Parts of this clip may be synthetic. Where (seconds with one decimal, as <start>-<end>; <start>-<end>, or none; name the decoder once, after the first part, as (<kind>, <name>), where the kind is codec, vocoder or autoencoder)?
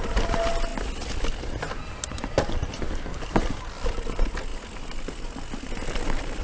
none